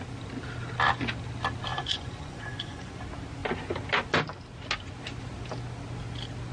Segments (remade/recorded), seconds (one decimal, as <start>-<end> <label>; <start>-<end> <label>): 0.0-1.7 recorded; 1.7-2.9 remade; 2.9-6.5 recorded